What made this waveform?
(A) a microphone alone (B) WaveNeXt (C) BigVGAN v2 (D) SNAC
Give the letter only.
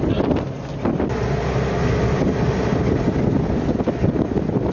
A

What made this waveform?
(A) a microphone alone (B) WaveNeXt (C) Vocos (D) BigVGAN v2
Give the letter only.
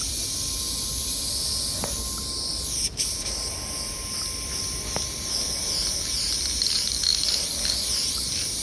A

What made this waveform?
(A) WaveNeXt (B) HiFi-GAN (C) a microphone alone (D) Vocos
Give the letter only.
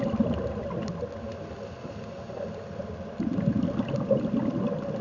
C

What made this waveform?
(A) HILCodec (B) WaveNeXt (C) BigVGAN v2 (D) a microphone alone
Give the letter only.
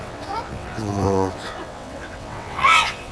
B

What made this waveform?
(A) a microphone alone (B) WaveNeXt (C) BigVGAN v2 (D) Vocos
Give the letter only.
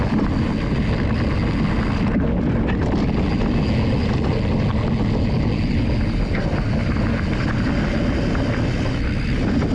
A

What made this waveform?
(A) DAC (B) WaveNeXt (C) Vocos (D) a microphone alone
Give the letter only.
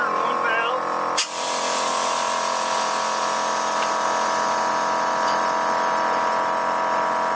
D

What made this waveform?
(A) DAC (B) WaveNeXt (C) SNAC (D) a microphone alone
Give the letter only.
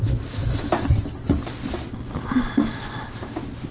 D